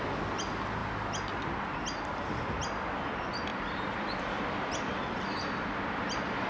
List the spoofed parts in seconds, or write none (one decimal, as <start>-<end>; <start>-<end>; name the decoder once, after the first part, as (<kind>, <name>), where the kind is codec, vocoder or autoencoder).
3.5-6.5 (vocoder, BigVGAN v2)